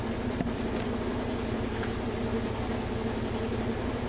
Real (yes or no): yes